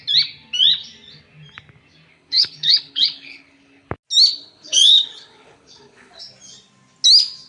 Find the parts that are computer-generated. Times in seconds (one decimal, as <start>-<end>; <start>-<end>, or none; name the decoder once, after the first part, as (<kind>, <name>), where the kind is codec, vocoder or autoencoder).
2.1-3.9 (codec, HILCodec); 4.3-6.2